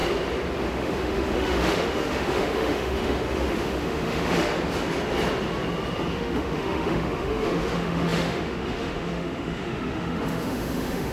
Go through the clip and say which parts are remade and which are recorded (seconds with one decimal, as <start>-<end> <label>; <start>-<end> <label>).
0.0-0.7 recorded; 0.7-4.5 remade; 4.5-6.1 recorded; 6.1-11.1 remade